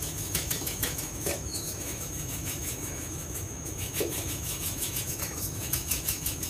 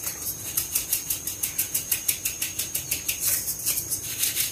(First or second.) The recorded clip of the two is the second